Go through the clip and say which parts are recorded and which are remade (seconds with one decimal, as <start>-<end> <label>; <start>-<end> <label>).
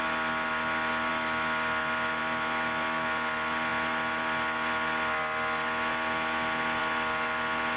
0.0-7.8 recorded